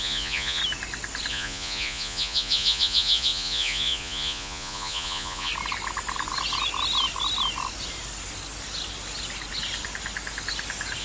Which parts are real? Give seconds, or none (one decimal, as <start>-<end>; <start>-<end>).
0.6-1.3; 5.5-11.0